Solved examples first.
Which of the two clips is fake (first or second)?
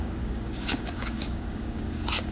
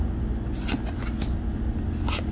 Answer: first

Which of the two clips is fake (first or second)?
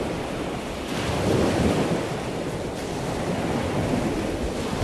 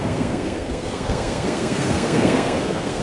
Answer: second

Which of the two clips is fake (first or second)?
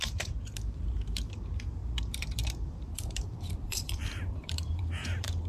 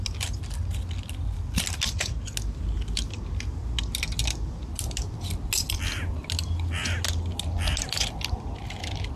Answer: first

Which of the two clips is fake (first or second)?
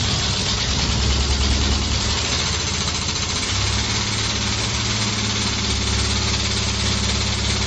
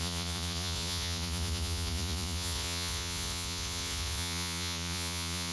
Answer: second